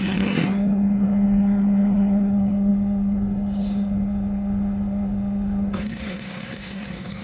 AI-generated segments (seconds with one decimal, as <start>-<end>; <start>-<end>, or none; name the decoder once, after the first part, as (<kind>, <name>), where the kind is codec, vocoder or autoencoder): 0.0-7.2 (codec, SNAC)